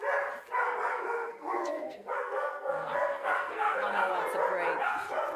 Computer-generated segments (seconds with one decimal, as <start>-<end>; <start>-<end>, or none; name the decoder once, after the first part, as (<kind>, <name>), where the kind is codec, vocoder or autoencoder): 0.9-4.1 (codec, SNAC)